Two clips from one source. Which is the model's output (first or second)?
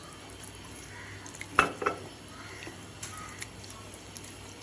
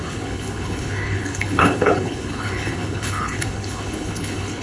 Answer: second